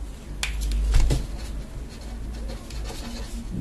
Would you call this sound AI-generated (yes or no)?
no